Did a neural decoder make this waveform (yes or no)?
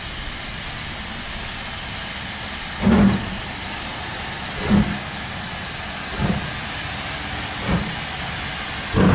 no